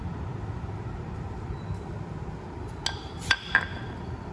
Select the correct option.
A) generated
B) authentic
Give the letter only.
B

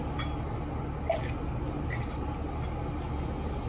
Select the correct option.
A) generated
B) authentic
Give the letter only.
B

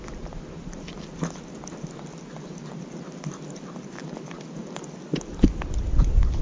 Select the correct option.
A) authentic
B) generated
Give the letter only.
A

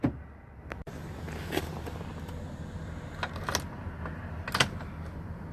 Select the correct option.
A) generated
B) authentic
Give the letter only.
B